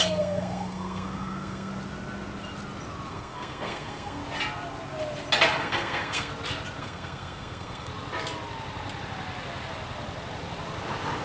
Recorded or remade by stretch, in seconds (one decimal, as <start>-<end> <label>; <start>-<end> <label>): 0.0-1.7 remade; 1.7-3.1 recorded; 3.1-4.2 remade; 4.2-5.6 recorded; 5.6-6.3 remade; 6.3-6.8 recorded; 6.8-7.9 remade; 7.9-11.2 recorded